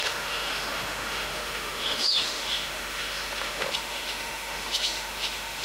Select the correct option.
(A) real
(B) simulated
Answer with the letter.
B